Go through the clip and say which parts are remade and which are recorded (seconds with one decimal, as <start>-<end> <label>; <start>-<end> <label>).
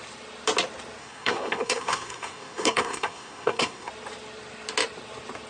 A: 0.0-1.0 recorded; 1.0-3.9 remade; 3.9-5.5 recorded